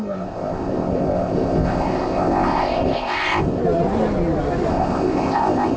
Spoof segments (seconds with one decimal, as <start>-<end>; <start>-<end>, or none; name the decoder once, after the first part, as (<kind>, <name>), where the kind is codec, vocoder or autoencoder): 0.0-3.6 (codec, ZipCodec); 4.7-5.8